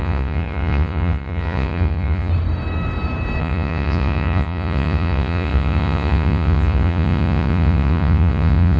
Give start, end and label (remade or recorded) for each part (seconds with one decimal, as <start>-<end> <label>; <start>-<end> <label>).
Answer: 0.0-2.3 remade; 2.3-3.4 recorded; 3.4-8.8 remade